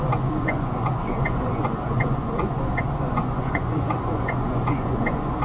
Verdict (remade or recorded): remade